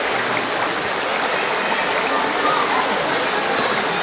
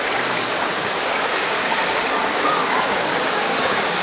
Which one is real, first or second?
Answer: first